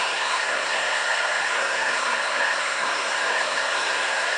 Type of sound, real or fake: fake